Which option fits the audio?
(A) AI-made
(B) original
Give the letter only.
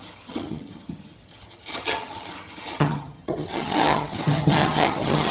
A